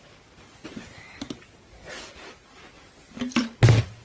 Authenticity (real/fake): real